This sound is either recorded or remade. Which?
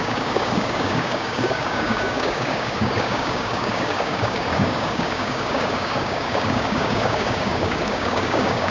remade